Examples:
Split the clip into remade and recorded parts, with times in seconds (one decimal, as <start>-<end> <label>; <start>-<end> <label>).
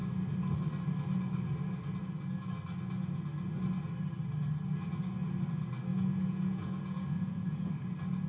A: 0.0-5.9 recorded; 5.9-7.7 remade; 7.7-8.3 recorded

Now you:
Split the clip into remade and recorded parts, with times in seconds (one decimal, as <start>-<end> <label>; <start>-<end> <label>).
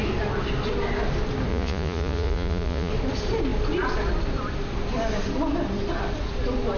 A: 0.0-1.5 recorded; 1.5-2.9 remade; 2.9-6.8 recorded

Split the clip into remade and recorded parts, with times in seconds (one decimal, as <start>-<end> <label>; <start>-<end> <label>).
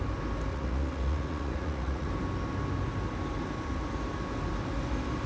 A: 0.0-0.5 recorded; 0.5-2.1 remade; 2.1-5.3 recorded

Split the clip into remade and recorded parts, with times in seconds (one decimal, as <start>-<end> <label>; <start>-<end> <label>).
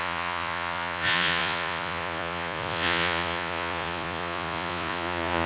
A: 0.0-5.5 remade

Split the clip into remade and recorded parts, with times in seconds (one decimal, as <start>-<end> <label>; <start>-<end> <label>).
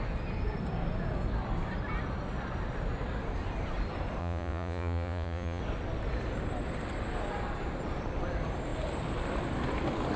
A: 0.0-4.2 recorded; 4.2-5.6 remade; 5.6-10.2 recorded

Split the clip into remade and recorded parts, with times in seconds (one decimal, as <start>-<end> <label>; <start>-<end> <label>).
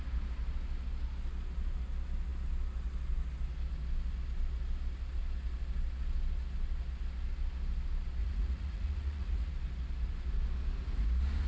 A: 0.0-8.2 recorded; 8.2-9.5 remade; 9.5-11.5 recorded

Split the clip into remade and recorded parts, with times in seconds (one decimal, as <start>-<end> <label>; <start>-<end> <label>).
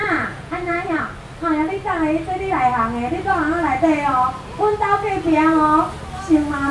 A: 0.0-1.0 remade; 1.0-6.7 recorded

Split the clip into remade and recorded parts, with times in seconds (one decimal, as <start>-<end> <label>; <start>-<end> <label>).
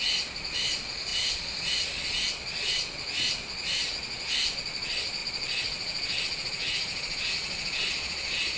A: 0.0-8.6 remade